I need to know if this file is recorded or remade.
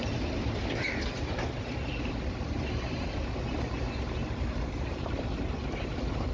recorded